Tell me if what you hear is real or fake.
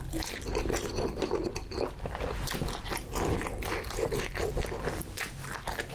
real